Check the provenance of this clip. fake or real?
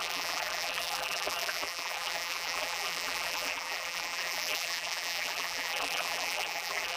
fake